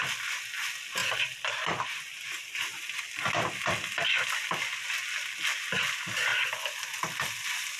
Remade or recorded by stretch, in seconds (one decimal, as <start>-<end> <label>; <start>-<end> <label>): 0.0-1.0 recorded; 1.0-4.5 remade; 4.5-7.8 recorded

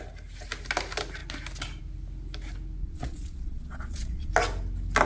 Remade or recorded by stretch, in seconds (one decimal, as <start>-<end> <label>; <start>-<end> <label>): 0.0-2.8 recorded; 2.8-4.3 remade; 4.3-5.1 recorded

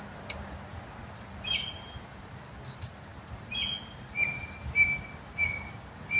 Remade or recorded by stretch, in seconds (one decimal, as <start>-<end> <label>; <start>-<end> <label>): 0.0-6.2 recorded

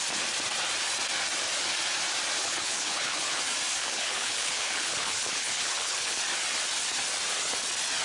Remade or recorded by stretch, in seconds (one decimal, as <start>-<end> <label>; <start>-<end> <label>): 0.0-2.4 recorded; 2.4-3.4 remade; 3.4-3.8 recorded; 3.8-6.2 remade; 6.2-8.0 recorded

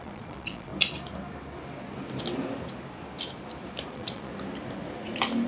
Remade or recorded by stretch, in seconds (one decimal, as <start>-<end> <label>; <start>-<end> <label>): 0.0-0.7 remade; 0.7-3.9 recorded; 3.9-4.3 remade; 4.3-5.5 recorded

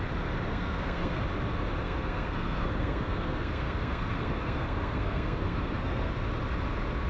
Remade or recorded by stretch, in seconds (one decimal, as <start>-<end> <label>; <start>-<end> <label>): 0.0-0.5 recorded; 0.5-1.2 remade; 1.2-1.8 recorded; 1.8-6.1 remade; 6.1-7.1 recorded

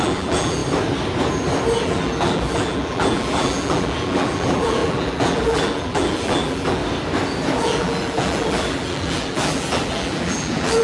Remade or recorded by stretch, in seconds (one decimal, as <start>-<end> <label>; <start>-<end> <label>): 0.0-0.6 remade; 0.6-1.8 recorded; 1.8-6.8 remade; 6.8-7.5 recorded; 7.5-10.8 remade